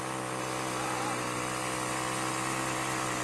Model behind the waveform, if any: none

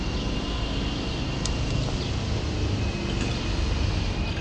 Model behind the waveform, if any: none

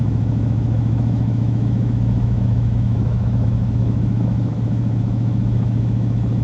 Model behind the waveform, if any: autoencoder, DAC-VAE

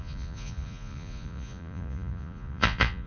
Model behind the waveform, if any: vocoder, Vocos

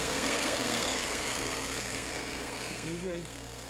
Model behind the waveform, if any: codec, SNAC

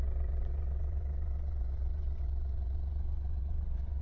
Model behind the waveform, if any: vocoder, WaveNeXt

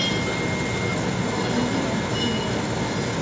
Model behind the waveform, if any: none